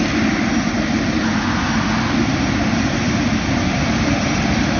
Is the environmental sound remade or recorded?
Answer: recorded